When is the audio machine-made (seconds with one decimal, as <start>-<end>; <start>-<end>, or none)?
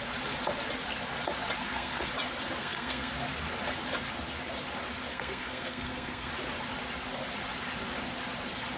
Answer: 1.6-2.1; 2.6-3.1; 5.1-6.3